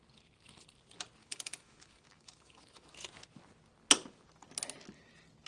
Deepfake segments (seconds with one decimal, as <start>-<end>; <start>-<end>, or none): 1.2-2.9

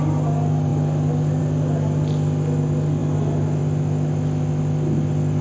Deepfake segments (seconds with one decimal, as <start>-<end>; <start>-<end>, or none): none

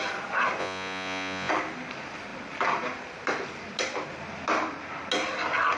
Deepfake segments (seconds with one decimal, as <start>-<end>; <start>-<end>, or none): 0.6-1.5

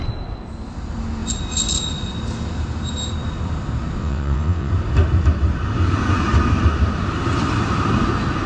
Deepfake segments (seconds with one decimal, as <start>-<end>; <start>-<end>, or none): 4.0-4.7

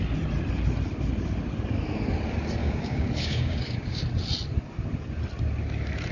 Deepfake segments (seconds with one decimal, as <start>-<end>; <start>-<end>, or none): 2.6-4.0